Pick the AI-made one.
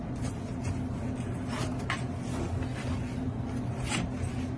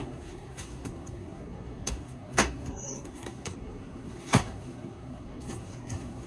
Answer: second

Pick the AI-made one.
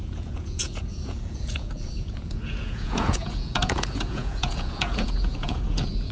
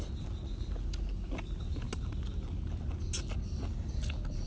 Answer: first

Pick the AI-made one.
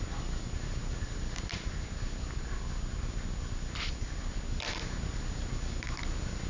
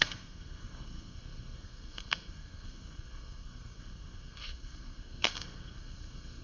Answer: second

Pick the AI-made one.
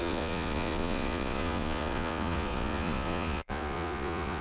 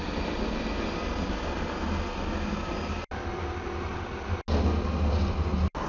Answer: first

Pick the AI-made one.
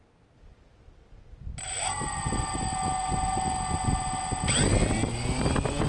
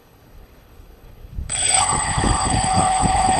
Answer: second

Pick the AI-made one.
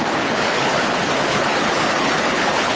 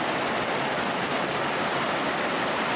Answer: first